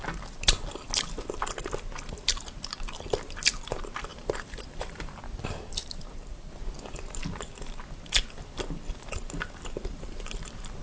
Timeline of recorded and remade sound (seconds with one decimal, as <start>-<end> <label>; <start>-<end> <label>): 0.0-4.1 recorded; 4.1-5.2 remade; 5.2-5.8 recorded; 5.8-6.5 remade; 6.5-9.8 recorded; 9.8-10.8 remade